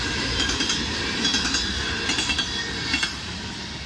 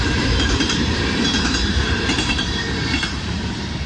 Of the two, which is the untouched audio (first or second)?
first